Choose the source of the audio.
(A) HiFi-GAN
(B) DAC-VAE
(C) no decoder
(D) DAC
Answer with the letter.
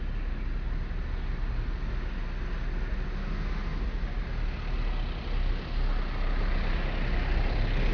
C